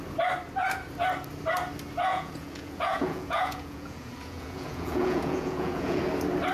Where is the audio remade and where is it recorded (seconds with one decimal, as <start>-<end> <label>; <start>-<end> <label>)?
0.0-2.1 recorded; 2.1-6.0 remade; 6.0-6.5 recorded